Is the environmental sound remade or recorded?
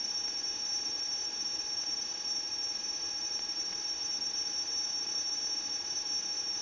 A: remade